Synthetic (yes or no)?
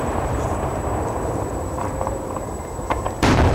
yes